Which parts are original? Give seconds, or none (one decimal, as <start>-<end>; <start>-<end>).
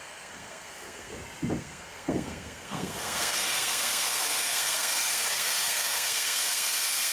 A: 1.1-1.6